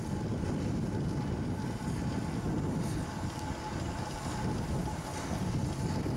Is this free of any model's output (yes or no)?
yes